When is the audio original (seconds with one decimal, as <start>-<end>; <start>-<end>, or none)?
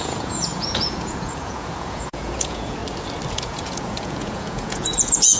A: 2.8-3.3